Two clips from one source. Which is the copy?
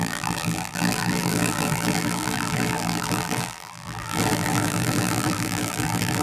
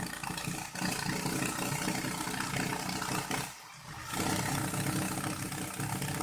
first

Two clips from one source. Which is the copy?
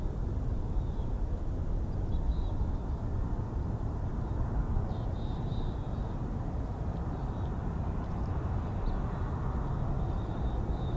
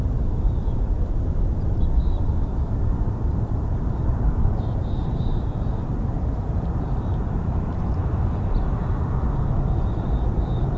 second